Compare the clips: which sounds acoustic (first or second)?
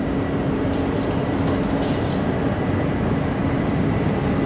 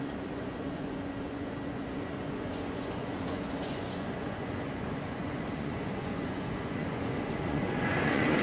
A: first